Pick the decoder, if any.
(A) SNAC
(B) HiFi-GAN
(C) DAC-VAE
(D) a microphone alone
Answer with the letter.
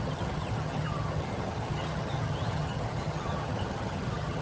B